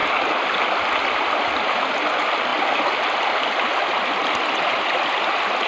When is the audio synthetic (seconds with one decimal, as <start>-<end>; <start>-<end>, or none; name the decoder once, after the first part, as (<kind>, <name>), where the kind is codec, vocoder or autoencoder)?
none